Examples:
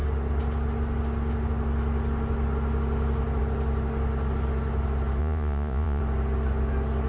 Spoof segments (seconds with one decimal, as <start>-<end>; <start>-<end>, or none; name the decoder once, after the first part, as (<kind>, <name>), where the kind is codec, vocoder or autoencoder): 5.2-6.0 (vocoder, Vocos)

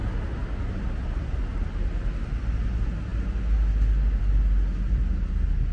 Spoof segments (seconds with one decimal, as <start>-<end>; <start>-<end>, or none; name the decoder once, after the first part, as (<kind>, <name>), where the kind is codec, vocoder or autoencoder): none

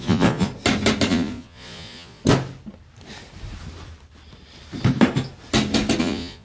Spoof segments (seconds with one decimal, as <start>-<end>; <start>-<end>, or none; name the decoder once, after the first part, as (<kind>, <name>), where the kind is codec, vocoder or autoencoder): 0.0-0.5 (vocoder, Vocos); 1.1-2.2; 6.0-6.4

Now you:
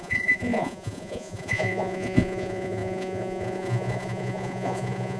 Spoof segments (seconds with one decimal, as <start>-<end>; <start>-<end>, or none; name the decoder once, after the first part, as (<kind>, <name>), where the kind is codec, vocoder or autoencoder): 0.0-5.2 (vocoder, Vocos)

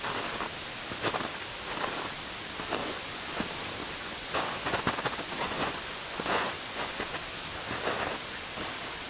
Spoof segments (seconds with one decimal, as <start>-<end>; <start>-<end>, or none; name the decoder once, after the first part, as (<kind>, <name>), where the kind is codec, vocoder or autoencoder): 2.8-3.4 (vocoder, Vocos); 3.8-7.2

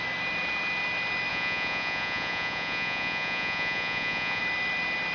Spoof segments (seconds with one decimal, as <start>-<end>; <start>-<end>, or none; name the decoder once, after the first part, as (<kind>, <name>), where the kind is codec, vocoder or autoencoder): 1.3-4.4 (vocoder, Vocos)